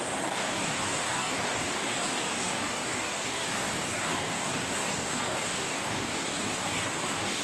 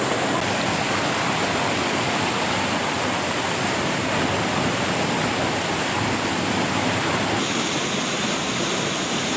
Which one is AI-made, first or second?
first